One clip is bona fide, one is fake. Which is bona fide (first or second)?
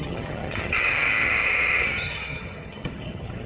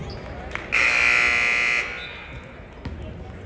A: second